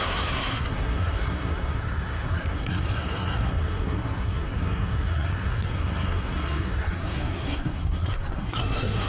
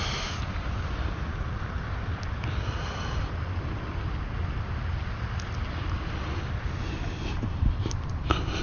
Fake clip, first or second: first